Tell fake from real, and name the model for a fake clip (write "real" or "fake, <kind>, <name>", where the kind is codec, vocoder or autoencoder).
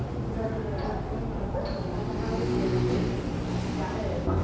real